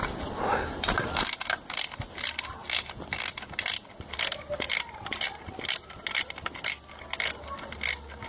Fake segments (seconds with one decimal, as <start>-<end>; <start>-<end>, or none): none